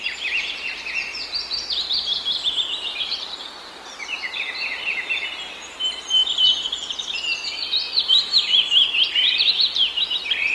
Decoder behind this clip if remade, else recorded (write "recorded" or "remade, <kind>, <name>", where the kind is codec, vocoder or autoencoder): remade, vocoder, BigVGAN v2